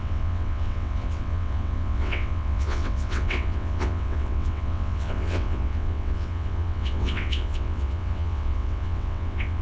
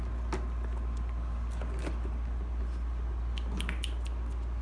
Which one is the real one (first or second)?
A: second